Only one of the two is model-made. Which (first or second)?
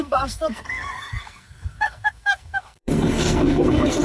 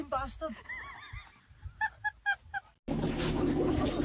first